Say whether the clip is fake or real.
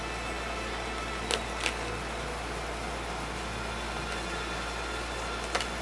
real